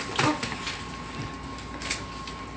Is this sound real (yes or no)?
yes